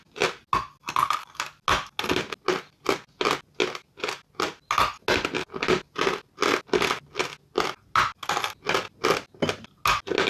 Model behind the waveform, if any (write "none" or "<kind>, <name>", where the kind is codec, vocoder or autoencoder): none